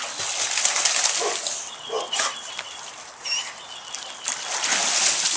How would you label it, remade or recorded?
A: recorded